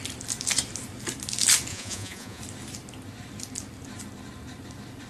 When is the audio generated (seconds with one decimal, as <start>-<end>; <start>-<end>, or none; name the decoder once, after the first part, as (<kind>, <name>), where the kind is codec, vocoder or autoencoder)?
1.7-2.4 (vocoder, Vocos)